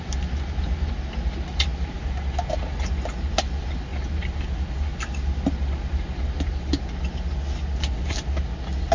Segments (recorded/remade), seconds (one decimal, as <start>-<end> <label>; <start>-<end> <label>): 0.0-8.9 recorded